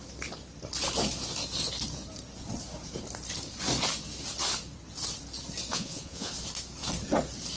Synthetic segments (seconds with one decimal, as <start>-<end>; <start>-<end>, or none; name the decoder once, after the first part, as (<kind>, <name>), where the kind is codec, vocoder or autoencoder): 5.7-6.3 (vocoder, Vocos)